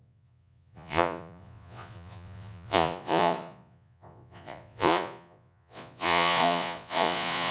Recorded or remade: remade